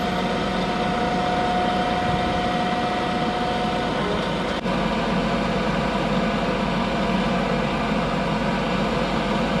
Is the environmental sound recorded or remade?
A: recorded